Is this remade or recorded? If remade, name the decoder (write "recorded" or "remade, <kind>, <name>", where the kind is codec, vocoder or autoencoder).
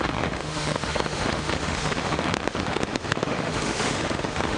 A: remade, autoencoder, DAC-VAE